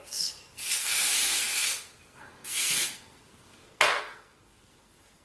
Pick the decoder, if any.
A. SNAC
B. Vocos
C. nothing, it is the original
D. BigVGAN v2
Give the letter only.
A